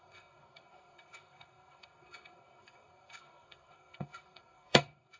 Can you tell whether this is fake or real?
fake